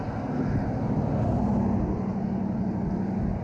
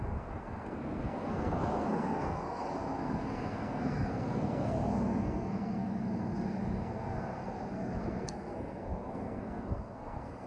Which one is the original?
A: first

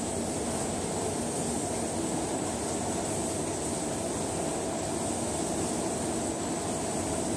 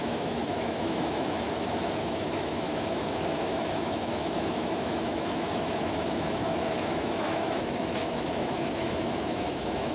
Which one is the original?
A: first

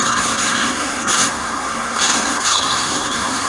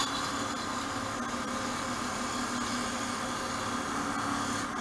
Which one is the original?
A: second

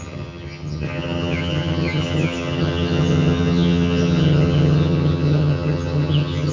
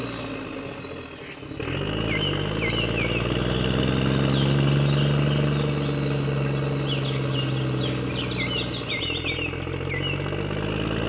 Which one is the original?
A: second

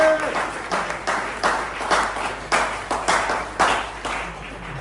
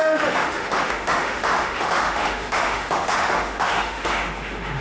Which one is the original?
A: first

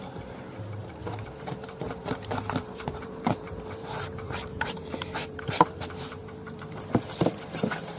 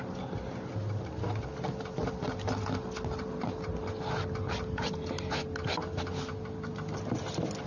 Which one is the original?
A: second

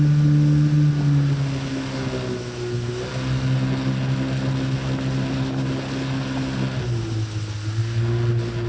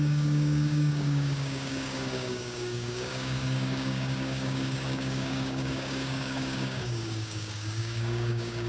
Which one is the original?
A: first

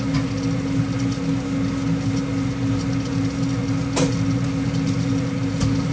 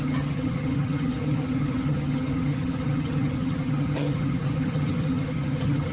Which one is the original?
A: first